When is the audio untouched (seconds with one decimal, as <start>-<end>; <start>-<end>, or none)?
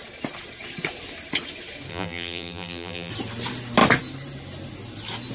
0.0-1.9; 3.1-5.3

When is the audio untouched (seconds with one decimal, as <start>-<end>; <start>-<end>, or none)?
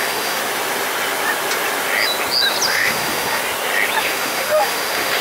0.4-2.7; 3.4-4.0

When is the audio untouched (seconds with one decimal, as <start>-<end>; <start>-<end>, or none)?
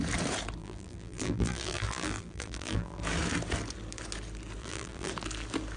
0.0-0.6; 3.0-4.6; 5.1-5.8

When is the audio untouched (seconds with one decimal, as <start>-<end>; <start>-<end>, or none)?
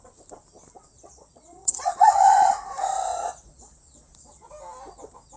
0.0-0.9; 2.5-3.1; 4.5-5.4